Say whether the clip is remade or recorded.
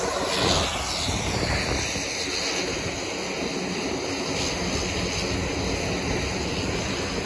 recorded